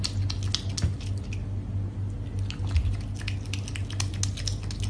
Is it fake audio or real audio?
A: real